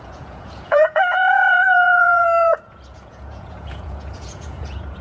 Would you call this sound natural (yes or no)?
no